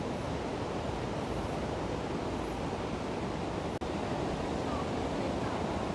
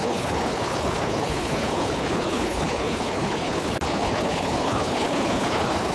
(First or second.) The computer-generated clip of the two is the second